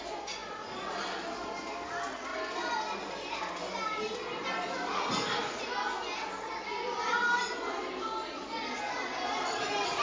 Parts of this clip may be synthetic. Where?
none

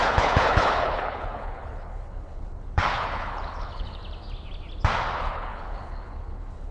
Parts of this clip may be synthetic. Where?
0.0-4.0 (codec, HILCodec); 5.2-6.7